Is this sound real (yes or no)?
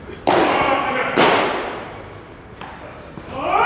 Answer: no